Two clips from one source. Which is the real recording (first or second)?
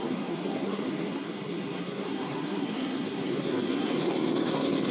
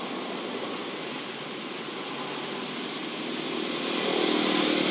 second